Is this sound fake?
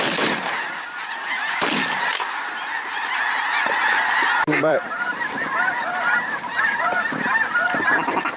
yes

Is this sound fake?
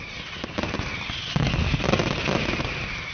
no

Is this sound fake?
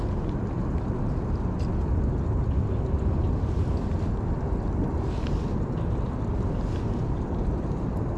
no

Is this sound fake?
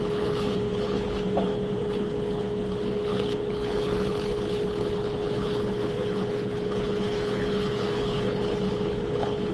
yes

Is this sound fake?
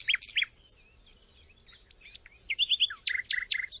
no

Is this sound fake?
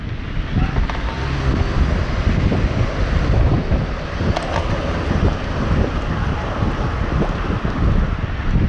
no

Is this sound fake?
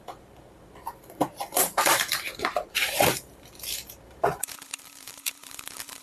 yes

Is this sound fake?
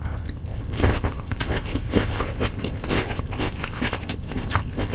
yes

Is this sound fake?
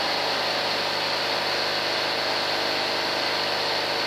no